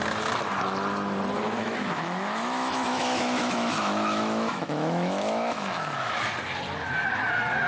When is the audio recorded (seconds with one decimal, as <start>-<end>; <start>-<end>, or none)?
0.0-1.6; 6.2-7.7